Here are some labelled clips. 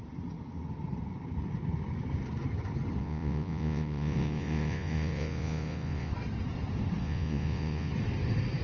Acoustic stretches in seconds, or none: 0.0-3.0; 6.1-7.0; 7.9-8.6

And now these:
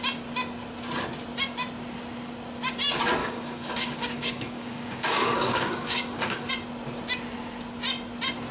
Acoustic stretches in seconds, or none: 0.0-3.2; 6.5-8.5

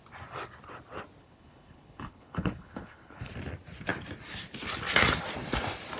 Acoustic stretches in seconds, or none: 0.0-1.2; 3.3-6.0

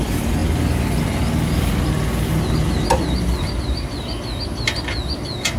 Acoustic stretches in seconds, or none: 0.0-5.6

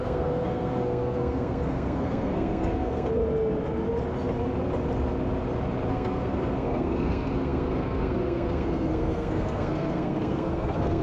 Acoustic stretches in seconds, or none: 3.2-5.9